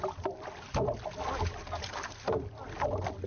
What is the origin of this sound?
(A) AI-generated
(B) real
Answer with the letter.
B